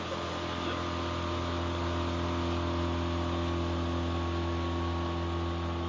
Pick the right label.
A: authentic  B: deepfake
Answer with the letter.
A